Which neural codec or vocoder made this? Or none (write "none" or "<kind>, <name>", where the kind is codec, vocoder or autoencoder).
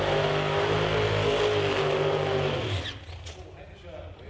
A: none